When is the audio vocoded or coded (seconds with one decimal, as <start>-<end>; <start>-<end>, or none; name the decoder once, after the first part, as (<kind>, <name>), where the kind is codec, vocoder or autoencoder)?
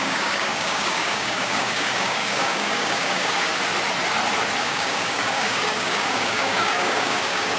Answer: 0.0-3.5 (codec, DAC); 4.6-7.6